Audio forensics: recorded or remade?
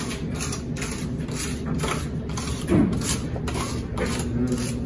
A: recorded